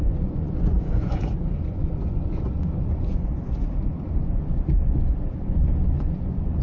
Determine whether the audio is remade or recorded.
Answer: remade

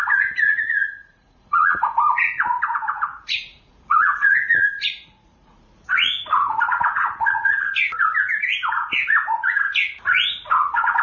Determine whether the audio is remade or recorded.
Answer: remade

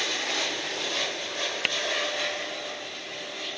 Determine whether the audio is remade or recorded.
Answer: recorded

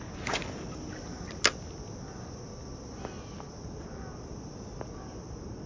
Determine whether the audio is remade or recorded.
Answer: recorded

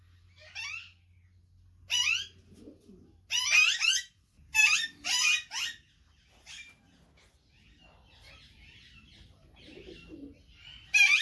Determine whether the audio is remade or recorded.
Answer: recorded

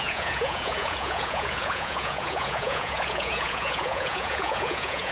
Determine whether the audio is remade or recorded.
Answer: remade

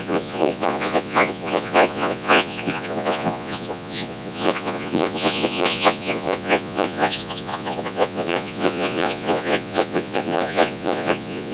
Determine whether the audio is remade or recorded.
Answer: remade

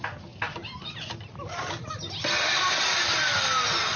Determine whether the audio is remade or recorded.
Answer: recorded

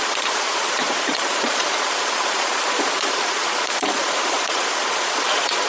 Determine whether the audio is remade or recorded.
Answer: remade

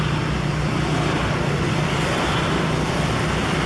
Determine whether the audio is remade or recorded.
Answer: recorded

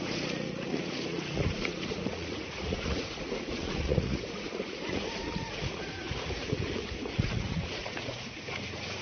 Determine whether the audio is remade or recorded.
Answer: remade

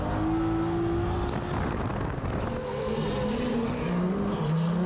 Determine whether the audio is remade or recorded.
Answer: recorded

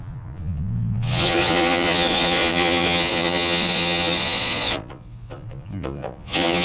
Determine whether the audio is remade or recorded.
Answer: remade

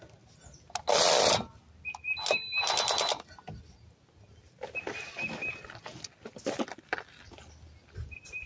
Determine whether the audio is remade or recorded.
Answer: recorded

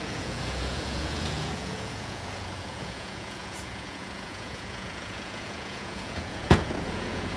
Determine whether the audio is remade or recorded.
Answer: remade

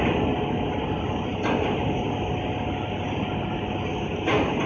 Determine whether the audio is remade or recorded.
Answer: recorded